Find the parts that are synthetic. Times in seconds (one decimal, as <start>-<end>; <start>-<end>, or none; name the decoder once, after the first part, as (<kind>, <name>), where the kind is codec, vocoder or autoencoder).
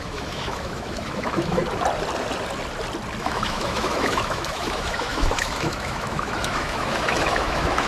0.0-1.6 (autoencoder, DAC-VAE); 3.2-7.9